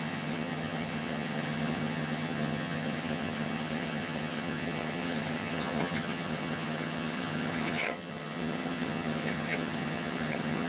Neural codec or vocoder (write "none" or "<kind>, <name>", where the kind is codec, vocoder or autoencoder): vocoder, HiFi-GAN